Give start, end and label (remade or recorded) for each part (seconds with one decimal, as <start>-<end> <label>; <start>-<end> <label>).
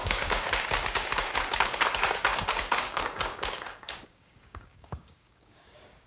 0.0-6.1 remade